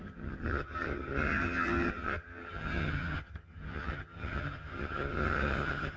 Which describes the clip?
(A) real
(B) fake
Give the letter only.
B